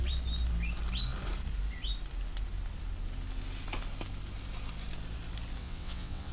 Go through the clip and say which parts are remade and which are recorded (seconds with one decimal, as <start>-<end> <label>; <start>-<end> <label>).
0.0-5.6 recorded; 5.6-6.3 remade

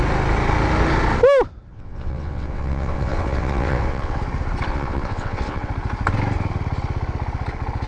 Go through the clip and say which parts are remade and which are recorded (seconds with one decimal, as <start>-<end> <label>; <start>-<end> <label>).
0.0-1.7 recorded; 1.7-4.2 remade; 4.2-4.7 recorded; 4.7-5.7 remade; 5.7-7.9 recorded

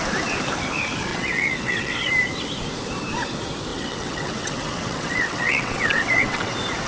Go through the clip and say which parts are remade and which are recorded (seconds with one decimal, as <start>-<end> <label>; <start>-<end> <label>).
0.0-1.1 recorded; 1.1-2.1 remade; 2.1-3.7 recorded; 3.7-6.5 remade; 6.5-6.9 recorded